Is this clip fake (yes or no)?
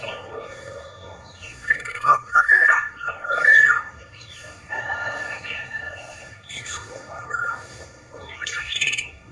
yes